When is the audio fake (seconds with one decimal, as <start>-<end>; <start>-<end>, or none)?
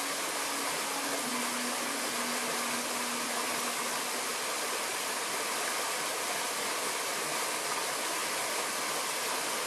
none